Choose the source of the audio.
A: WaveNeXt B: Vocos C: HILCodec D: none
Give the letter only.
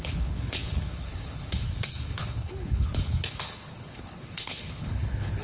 C